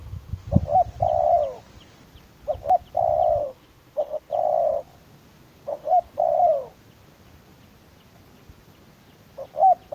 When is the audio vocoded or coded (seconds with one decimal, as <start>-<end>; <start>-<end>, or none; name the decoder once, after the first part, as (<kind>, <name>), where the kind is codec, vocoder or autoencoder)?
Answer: 0.0-0.5 (autoencoder, DAC-VAE); 3.4-4.3; 5.7-6.2